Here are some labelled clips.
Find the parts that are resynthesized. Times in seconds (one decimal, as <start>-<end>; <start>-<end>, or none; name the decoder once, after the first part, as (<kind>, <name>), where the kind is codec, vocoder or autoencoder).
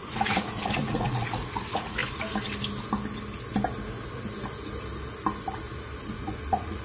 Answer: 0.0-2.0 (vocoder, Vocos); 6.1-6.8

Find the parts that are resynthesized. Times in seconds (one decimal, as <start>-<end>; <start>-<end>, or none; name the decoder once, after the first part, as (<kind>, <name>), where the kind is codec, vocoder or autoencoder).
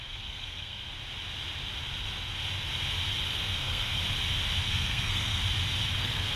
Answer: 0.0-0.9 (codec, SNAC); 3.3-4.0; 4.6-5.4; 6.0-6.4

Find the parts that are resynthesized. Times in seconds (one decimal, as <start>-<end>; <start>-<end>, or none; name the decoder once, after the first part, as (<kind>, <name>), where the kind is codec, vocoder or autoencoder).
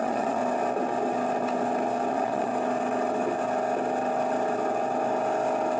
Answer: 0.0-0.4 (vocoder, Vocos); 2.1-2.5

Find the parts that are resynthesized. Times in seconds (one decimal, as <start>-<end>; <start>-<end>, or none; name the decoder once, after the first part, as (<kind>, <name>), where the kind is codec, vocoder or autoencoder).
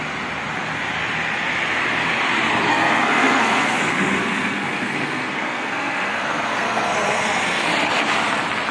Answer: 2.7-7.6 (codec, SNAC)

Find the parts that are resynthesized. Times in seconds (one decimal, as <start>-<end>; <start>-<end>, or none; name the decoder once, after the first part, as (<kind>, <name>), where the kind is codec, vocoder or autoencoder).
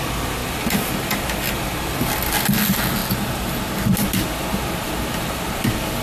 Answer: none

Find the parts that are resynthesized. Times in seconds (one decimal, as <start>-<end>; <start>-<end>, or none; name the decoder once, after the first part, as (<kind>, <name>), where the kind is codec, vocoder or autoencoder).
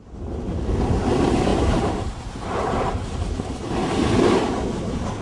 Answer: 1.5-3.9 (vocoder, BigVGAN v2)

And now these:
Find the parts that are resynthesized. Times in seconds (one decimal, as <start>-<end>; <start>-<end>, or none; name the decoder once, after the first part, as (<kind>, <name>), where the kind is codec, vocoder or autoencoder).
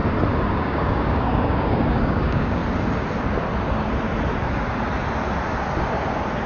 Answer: 0.5-2.6 (codec, DAC)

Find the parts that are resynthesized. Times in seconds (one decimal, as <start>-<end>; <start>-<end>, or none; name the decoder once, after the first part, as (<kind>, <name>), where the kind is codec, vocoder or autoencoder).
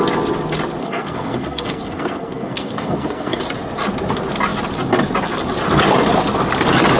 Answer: 0.8-3.4 (codec, SNAC)